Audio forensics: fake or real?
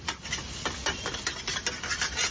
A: real